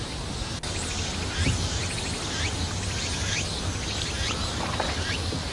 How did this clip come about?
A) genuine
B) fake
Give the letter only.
A